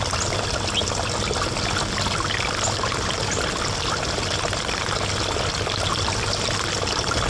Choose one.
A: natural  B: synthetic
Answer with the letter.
A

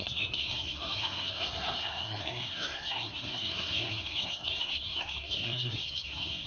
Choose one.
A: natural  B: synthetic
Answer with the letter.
B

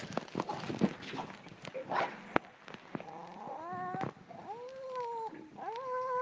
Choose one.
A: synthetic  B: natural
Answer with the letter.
B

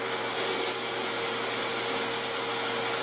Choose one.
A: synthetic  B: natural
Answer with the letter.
B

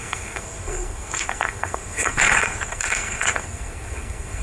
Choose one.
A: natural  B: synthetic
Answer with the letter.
B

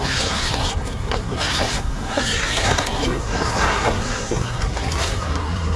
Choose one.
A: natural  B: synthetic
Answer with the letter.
B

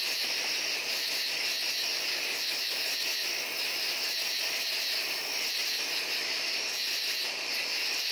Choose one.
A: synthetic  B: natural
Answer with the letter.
B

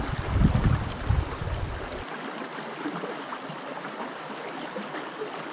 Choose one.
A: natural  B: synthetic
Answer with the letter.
A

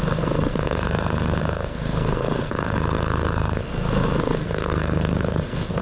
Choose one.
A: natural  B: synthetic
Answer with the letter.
B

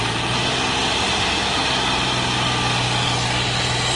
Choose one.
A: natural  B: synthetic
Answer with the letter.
A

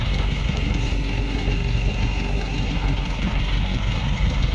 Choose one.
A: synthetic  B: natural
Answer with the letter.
A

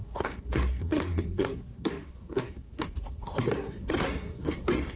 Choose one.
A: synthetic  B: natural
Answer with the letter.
A